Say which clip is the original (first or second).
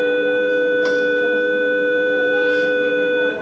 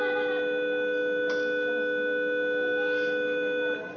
second